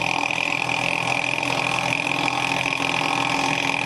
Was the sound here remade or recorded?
recorded